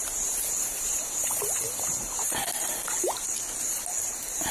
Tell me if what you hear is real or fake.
fake